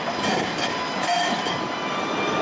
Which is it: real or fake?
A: real